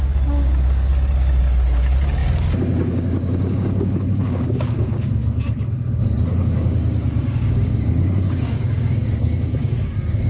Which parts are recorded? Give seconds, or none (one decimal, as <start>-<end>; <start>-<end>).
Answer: 0.9-1.4; 5.2-6.3